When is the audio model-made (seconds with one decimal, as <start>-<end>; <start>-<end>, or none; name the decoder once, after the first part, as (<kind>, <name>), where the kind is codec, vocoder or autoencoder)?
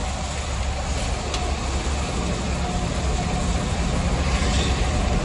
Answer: none